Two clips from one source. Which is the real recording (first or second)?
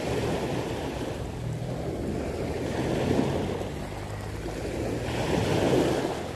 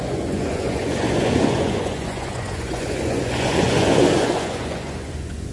first